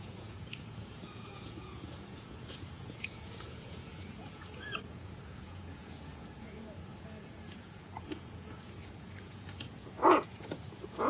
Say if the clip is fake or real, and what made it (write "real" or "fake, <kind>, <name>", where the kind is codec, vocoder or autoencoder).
fake, vocoder, Vocos